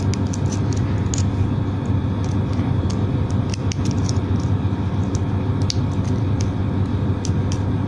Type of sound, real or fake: real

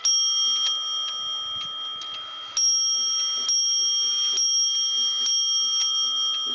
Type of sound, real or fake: real